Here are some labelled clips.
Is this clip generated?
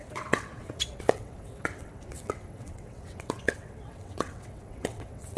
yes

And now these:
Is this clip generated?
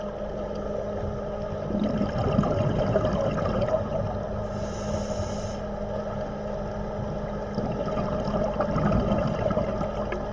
no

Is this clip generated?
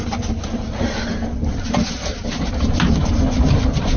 no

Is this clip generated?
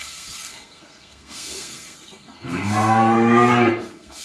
yes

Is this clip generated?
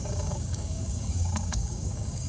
yes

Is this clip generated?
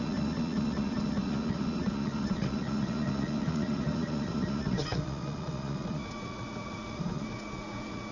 yes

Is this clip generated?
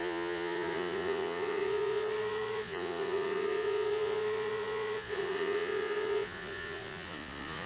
yes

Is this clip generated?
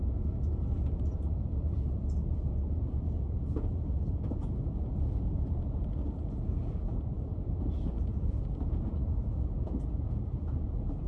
yes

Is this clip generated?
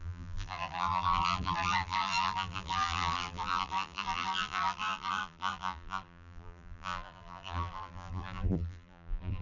yes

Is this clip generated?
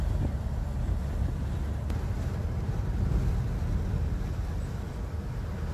no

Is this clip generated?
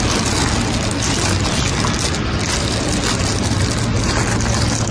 no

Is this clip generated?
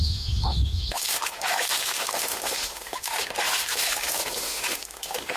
yes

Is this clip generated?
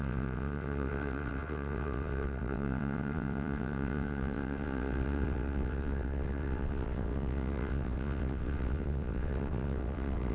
yes